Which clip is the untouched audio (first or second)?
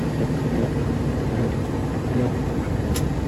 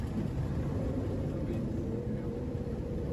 first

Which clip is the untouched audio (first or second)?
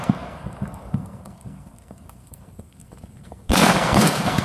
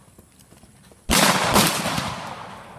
second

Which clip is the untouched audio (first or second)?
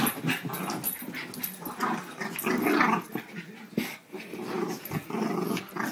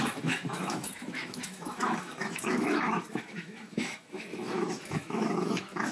first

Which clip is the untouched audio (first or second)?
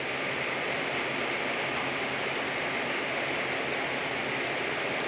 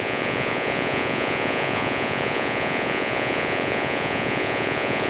first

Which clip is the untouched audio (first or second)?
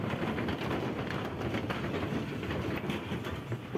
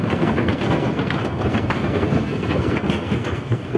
first